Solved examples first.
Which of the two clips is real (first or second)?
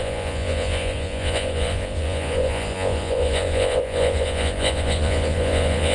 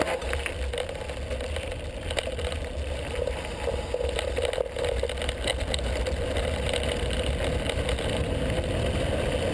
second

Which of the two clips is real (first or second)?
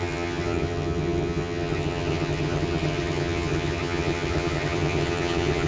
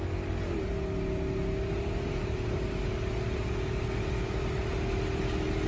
second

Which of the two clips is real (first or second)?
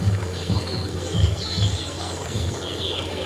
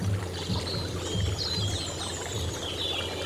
second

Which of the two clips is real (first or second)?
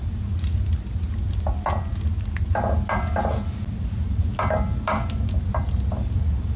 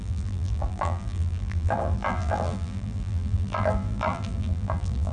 first